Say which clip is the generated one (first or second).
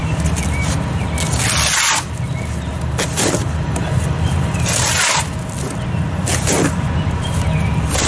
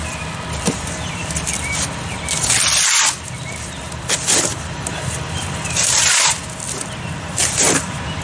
second